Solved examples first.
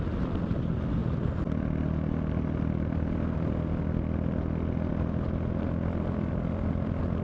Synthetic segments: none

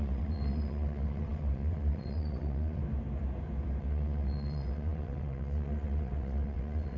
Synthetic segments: 0.0-2.8; 3.8-7.0